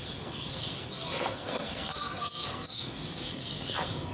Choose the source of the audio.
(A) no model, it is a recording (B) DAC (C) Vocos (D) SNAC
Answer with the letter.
D